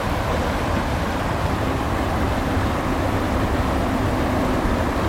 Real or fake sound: real